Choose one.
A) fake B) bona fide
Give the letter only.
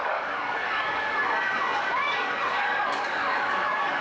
A